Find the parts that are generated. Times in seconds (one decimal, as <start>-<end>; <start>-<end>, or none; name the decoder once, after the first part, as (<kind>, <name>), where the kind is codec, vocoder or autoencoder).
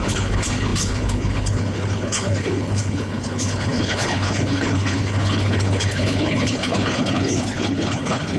0.0-8.4 (codec, HILCodec)